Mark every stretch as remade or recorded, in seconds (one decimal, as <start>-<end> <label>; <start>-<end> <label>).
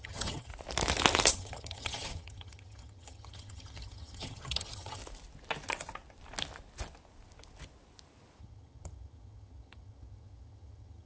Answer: 0.0-0.5 remade; 0.5-1.3 recorded; 1.3-5.0 remade; 5.0-8.4 recorded; 8.4-11.1 remade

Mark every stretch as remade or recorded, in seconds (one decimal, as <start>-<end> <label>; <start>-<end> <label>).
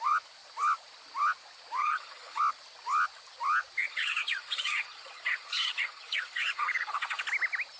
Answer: 0.0-1.8 recorded; 1.8-2.4 remade; 2.4-3.8 recorded; 3.8-7.2 remade; 7.2-7.8 recorded